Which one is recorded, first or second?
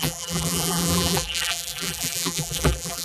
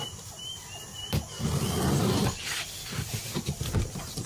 second